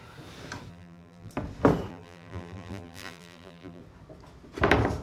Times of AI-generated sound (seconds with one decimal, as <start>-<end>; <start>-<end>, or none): 0.7-1.3; 1.9-3.8